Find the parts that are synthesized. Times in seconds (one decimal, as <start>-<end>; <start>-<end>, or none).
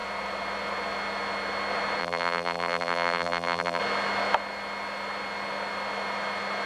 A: 2.0-3.8